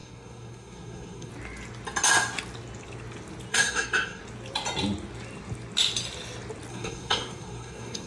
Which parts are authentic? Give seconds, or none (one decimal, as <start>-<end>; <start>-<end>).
1.3-3.5; 4.2-6.7